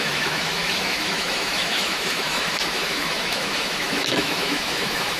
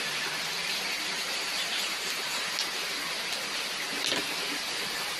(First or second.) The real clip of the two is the second